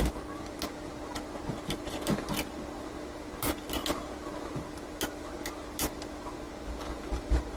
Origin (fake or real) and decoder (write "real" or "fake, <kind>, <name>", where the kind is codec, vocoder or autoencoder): real